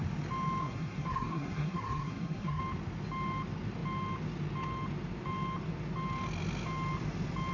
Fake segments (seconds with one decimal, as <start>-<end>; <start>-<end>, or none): 0.6-2.6